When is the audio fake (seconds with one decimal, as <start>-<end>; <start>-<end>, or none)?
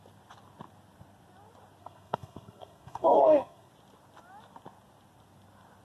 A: 1.8-3.7